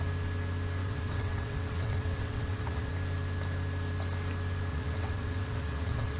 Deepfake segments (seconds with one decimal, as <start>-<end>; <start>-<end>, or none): 0.8-2.9; 4.7-6.2